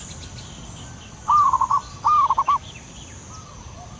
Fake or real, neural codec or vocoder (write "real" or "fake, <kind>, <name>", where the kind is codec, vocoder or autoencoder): real